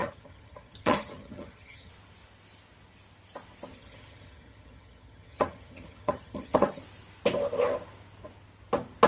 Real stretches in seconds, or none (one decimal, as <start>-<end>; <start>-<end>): 1.9-3.7; 6.8-9.1